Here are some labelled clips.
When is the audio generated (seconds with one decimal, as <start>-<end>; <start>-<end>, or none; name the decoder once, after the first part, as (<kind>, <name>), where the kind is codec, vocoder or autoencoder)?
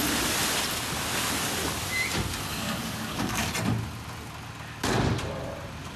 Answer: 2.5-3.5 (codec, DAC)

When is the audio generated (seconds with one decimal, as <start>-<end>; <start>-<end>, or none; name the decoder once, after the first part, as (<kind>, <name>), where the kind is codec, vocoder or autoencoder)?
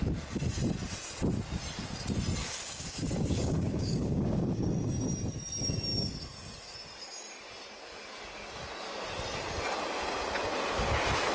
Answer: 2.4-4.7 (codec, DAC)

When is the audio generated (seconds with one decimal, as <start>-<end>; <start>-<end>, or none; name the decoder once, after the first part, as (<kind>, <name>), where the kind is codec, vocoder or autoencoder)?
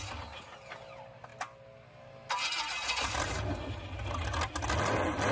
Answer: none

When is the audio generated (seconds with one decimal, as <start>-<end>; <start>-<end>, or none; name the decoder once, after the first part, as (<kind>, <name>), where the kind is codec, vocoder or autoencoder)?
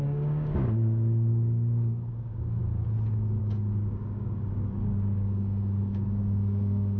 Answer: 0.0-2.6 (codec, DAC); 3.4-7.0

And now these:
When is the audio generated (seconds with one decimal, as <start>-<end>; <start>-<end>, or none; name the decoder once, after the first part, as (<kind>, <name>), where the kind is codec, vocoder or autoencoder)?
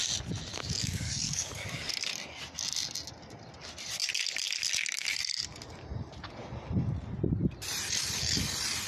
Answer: 0.5-1.9 (codec, DAC)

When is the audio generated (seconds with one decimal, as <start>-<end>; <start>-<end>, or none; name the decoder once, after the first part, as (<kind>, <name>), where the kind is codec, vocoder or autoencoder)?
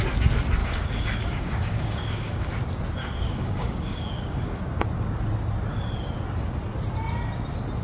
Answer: 0.6-2.5 (codec, DAC); 3.0-4.6